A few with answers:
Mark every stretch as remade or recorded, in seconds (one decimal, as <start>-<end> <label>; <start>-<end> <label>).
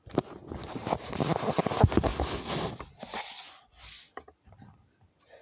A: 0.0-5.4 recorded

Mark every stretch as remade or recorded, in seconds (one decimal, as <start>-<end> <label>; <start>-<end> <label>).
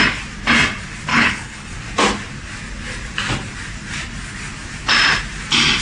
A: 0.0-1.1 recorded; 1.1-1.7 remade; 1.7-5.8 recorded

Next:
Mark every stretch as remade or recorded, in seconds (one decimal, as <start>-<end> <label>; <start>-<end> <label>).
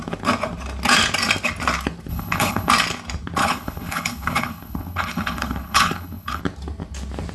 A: 0.0-2.1 recorded; 2.1-2.7 remade; 2.7-3.4 recorded; 3.4-6.4 remade; 6.4-7.3 recorded